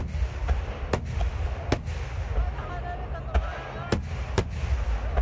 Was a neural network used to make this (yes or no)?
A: no